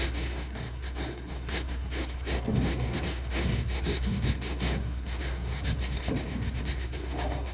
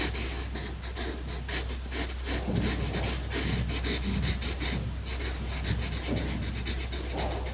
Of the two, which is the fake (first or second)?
first